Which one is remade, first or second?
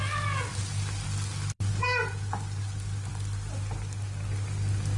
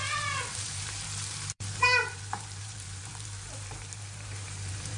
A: second